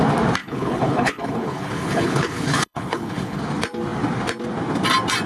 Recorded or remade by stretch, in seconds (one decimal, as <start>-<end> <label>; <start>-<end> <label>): 0.0-0.4 recorded; 0.4-3.4 remade; 3.4-5.3 recorded